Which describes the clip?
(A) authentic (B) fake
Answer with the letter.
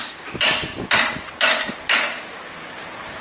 A